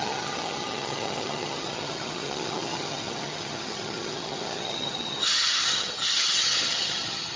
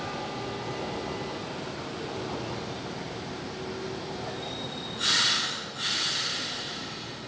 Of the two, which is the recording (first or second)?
second